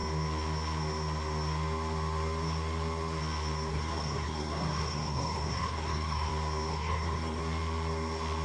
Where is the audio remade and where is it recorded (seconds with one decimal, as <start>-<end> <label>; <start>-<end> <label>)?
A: 0.0-3.7 recorded; 3.7-6.3 remade; 6.3-6.7 recorded; 6.7-7.4 remade; 7.4-8.4 recorded